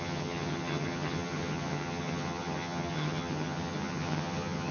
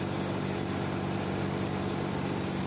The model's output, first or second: first